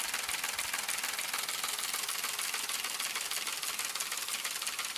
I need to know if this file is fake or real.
real